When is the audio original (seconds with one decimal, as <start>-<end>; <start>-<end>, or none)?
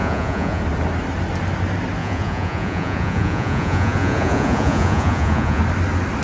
0.6-2.0; 5.6-6.2